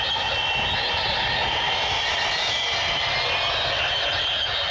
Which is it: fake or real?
real